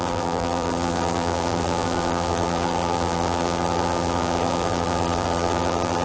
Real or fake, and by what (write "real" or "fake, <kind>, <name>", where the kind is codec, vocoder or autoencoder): fake, vocoder, BigVGAN v2